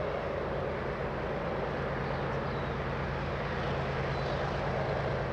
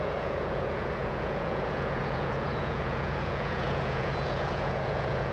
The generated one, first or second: second